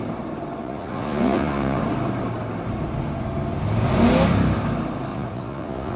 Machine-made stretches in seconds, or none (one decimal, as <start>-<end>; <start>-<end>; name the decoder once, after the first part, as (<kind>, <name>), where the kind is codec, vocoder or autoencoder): 0.6-1.8 (vocoder, Vocos); 5.1-6.0